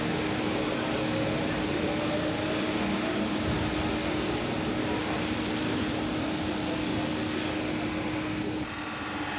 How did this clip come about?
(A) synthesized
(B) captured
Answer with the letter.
B